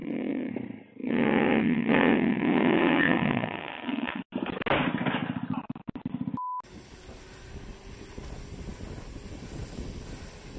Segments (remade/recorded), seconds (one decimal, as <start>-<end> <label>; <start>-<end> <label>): 0.0-0.5 remade; 0.5-1.0 recorded; 1.0-4.2 remade; 4.2-10.6 recorded